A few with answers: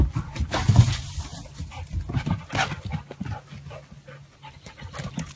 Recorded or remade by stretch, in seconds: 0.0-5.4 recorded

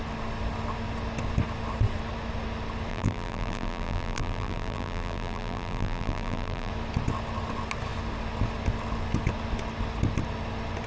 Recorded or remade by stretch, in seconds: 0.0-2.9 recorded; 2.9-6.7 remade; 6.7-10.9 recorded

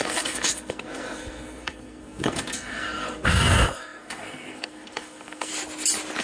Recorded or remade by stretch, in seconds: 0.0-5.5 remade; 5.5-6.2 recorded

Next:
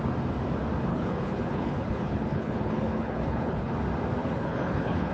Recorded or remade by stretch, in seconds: 0.0-0.9 recorded; 0.9-3.7 remade; 3.7-4.2 recorded; 4.2-5.1 remade